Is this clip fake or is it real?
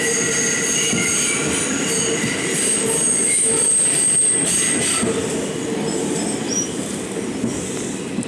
real